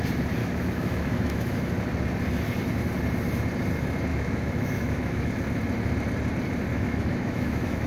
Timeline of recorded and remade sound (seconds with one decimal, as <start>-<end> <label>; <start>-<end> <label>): 0.0-0.4 recorded; 0.4-1.7 remade; 1.7-4.1 recorded; 4.1-5.3 remade; 5.3-6.7 recorded; 6.7-7.9 remade